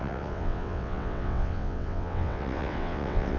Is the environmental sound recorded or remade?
remade